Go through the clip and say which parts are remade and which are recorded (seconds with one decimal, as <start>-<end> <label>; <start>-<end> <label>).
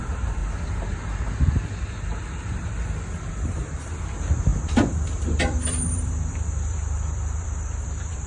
0.0-0.4 remade; 0.4-3.3 recorded; 3.3-8.3 remade